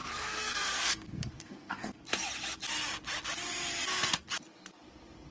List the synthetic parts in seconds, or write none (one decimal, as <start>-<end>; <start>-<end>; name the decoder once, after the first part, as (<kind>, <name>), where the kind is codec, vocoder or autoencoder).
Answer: 0.0-2.0 (codec, SNAC)